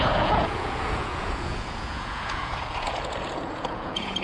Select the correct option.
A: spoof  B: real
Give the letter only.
A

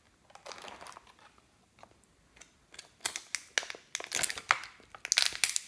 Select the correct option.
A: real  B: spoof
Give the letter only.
A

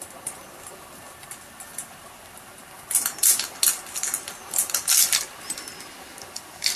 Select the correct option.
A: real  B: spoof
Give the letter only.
A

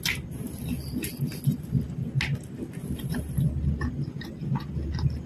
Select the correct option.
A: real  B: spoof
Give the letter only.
A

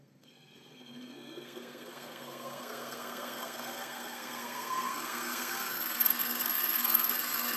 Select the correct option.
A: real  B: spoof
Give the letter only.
B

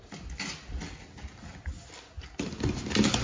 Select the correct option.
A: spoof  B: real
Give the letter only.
B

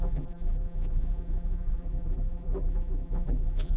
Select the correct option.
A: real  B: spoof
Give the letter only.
B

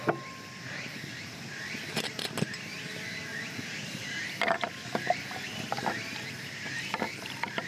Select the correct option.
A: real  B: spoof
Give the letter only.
A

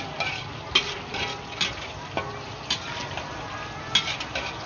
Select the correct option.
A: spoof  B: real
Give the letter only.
B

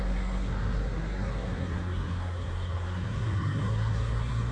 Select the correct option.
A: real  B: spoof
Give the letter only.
B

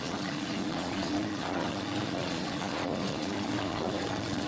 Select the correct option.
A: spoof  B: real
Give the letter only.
A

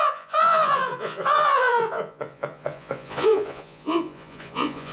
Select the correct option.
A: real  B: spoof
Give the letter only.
B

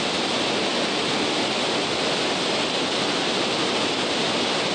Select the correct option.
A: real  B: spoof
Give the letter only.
A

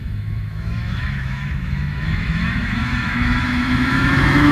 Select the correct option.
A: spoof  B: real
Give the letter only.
A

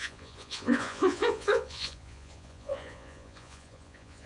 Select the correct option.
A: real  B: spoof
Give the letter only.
B